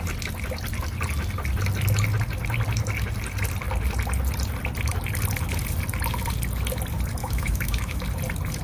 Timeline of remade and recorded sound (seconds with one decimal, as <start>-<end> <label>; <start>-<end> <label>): 0.0-7.2 recorded; 7.2-8.0 remade; 8.0-8.6 recorded